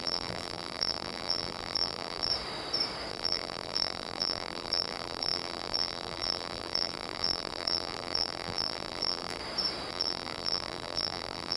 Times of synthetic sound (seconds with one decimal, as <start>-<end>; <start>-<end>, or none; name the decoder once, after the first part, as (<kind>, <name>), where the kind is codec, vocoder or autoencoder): 0.0-2.3 (vocoder, BigVGAN v2); 3.1-9.4; 9.9-11.6